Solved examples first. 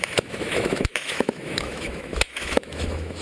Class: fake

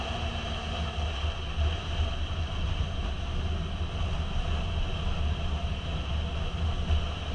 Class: real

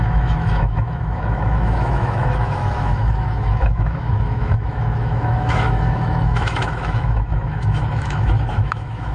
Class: fake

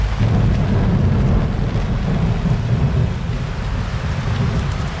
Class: real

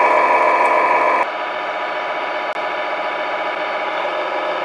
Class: real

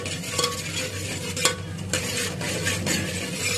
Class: real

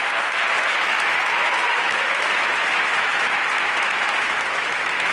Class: fake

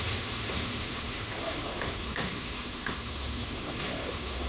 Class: fake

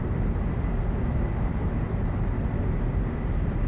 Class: real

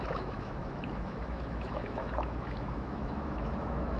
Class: fake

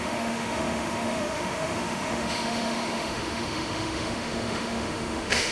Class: fake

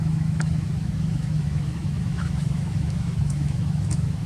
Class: fake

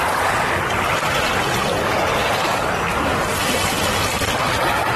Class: real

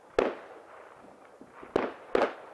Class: real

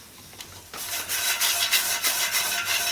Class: real